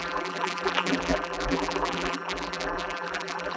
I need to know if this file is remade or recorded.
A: remade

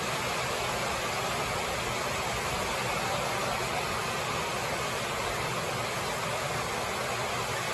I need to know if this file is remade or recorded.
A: recorded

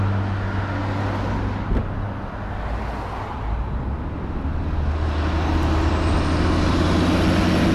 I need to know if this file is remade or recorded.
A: recorded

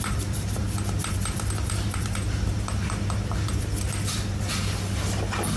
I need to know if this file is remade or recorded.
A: remade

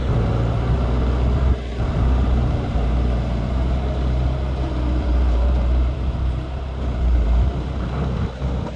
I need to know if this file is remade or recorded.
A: remade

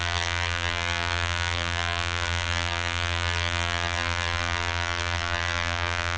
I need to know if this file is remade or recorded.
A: remade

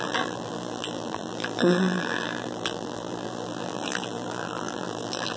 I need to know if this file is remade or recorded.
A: remade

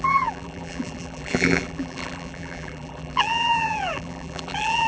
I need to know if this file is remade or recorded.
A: remade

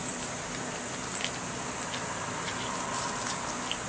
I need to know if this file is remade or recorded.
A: recorded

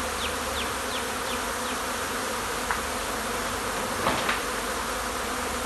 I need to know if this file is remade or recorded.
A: recorded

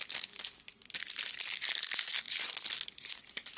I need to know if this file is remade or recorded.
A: recorded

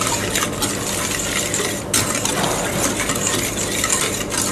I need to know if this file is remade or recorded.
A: recorded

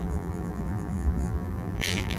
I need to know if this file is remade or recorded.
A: remade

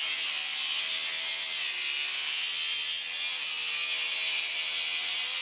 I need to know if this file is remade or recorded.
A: recorded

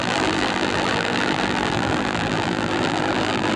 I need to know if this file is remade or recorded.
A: remade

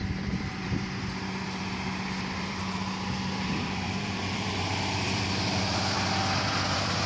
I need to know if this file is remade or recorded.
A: remade